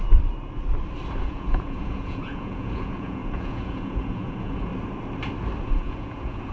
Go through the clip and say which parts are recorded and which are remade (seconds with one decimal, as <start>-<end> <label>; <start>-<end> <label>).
0.0-1.2 recorded; 1.2-4.7 remade; 4.7-5.6 recorded; 5.6-6.5 remade